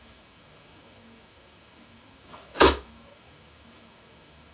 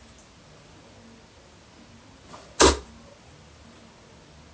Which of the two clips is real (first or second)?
second